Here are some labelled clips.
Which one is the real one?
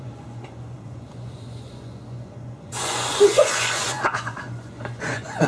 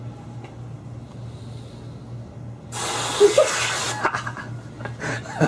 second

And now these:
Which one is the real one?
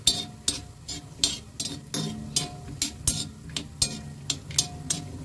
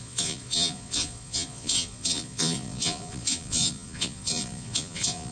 first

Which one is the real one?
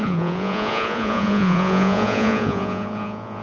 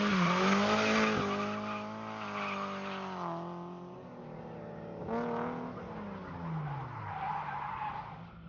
second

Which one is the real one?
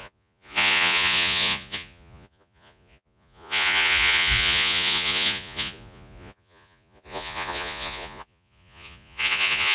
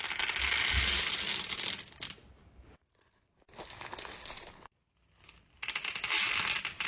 second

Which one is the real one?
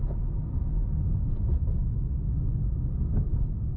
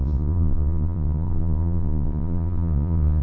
first